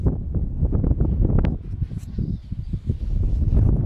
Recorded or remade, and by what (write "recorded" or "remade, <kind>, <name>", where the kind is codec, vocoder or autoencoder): recorded